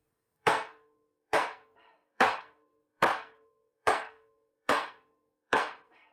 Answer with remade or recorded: remade